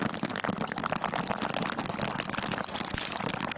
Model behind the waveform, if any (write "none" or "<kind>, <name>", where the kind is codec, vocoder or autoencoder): none